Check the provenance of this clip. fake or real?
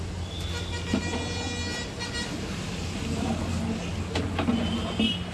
real